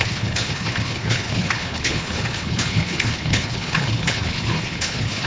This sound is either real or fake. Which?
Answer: fake